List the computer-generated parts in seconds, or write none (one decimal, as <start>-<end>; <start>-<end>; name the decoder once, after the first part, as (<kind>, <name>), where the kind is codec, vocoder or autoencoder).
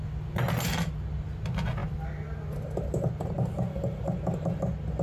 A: none